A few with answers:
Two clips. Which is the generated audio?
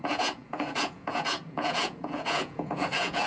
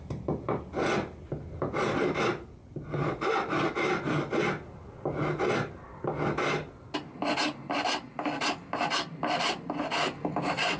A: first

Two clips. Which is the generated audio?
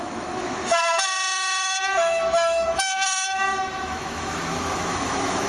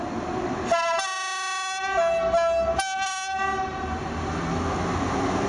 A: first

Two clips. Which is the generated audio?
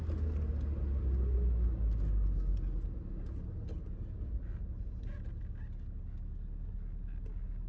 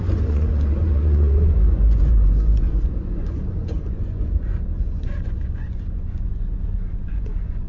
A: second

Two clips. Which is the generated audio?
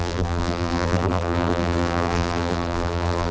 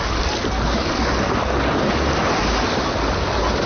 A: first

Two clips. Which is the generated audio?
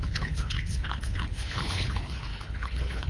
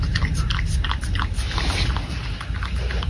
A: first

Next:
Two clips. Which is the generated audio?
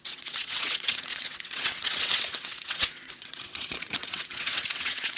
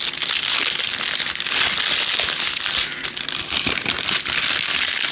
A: first